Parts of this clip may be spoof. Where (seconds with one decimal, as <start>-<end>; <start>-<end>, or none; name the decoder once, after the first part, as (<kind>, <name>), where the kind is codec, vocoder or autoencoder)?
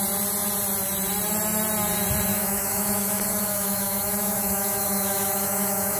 2.3-6.0 (autoencoder, DAC-VAE)